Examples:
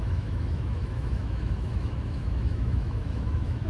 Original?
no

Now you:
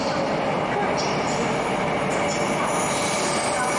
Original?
yes